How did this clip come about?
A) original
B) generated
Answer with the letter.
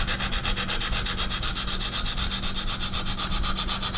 A